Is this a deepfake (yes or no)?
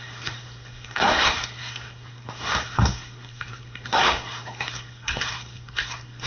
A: yes